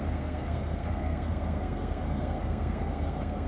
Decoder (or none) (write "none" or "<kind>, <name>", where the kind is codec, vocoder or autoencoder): codec, SNAC